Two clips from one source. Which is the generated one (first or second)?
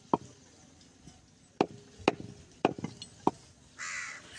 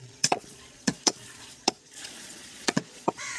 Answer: second